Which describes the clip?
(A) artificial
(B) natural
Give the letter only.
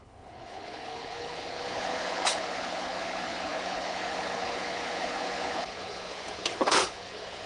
A